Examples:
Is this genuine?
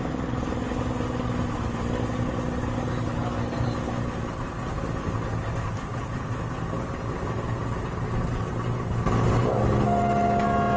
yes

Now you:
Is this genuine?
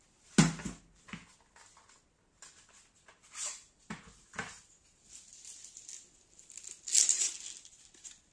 yes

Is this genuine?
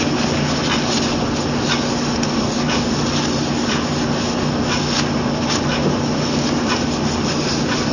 yes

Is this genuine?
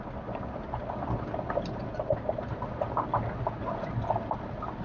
yes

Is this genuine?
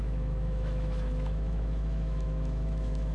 no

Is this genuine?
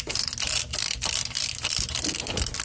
no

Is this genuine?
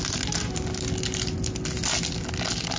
yes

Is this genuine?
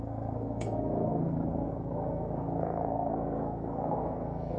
no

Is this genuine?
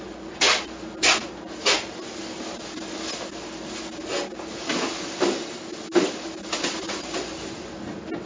yes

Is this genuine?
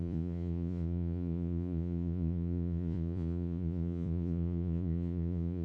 no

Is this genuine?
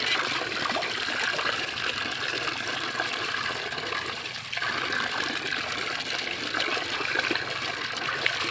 no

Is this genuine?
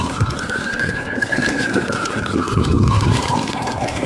no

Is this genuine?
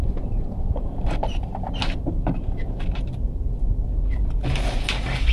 yes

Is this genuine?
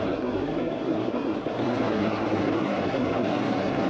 no